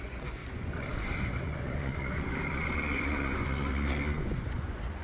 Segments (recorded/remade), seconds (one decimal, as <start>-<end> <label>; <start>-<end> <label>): 0.0-5.0 remade